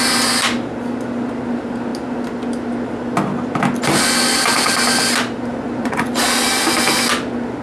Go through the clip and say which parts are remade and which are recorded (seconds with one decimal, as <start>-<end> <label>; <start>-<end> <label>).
0.0-5.5 recorded; 5.5-6.1 remade; 6.1-7.6 recorded

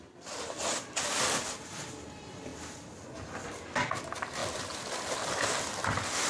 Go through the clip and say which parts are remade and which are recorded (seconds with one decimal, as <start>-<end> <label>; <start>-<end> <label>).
0.0-2.5 remade; 2.5-3.3 recorded; 3.3-6.3 remade

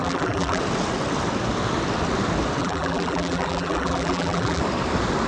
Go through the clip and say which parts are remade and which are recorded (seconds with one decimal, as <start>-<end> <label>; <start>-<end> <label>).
0.0-0.6 remade; 0.6-2.6 recorded; 2.6-4.6 remade; 4.6-5.3 recorded

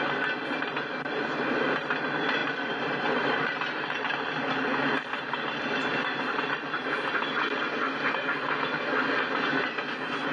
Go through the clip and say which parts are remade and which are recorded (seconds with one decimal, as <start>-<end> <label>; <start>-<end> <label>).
0.0-2.4 recorded; 2.4-6.9 remade; 6.9-10.3 recorded

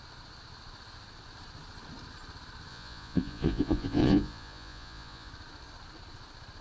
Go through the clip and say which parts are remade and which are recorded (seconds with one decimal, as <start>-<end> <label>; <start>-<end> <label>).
0.0-2.7 recorded; 2.7-5.3 remade; 5.3-6.6 recorded

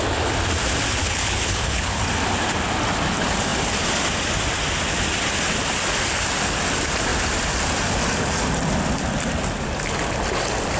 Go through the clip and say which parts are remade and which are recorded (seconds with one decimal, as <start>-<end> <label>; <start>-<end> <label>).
0.0-1.0 recorded; 1.0-2.0 remade; 2.0-10.8 recorded

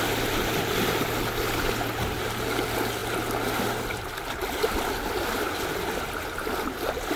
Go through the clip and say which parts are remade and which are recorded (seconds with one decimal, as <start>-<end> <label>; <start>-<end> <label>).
0.0-7.2 recorded